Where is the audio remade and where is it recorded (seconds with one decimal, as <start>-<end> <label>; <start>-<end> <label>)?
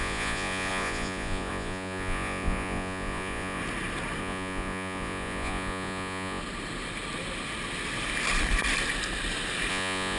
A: 0.0-3.6 remade; 3.6-4.2 recorded; 4.2-6.4 remade; 6.4-9.7 recorded; 9.7-10.2 remade